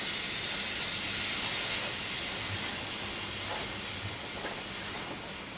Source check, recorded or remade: recorded